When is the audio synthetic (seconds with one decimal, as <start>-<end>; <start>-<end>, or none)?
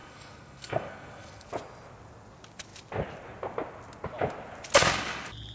0.0-1.5